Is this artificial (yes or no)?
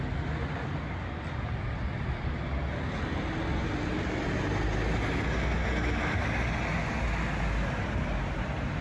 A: no